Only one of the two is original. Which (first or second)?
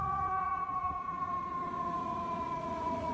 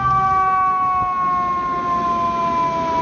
second